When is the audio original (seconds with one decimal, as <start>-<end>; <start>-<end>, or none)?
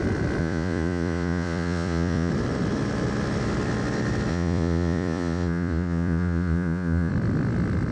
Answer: 0.0-0.4; 2.3-4.3; 7.1-7.9